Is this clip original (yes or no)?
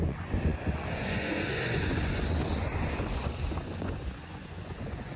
no